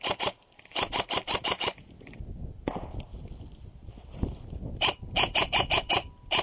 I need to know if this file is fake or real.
real